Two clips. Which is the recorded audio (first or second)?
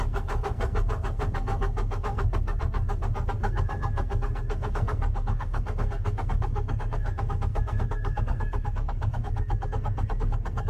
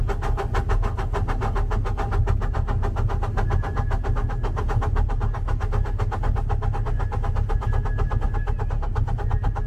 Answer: second